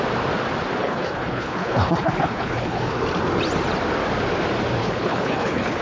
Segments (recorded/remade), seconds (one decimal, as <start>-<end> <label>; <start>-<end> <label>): 0.0-0.8 recorded; 0.8-2.8 remade; 2.8-4.8 recorded; 4.8-5.8 remade